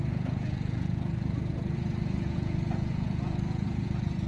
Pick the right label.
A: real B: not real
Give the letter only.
B